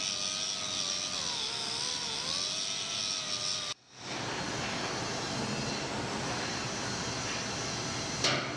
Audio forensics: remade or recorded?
recorded